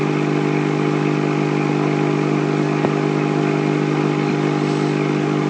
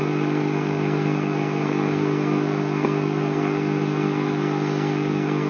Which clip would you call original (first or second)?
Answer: first